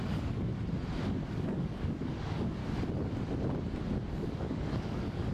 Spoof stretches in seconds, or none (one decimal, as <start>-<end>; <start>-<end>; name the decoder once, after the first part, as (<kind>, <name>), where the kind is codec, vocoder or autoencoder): 0.0-0.5 (codec, DAC); 1.4-2.6; 4.1-5.3